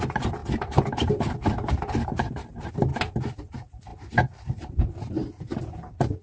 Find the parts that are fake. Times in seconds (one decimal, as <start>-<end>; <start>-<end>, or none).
0.0-2.9; 3.5-6.2